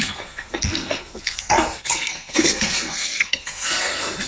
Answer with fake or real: fake